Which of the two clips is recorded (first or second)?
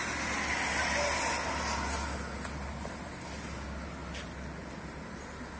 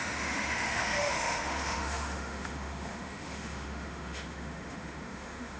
first